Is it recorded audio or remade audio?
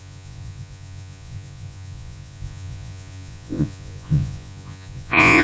remade